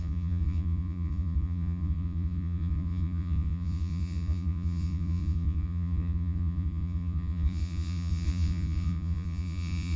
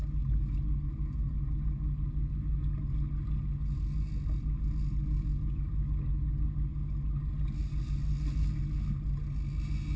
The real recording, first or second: second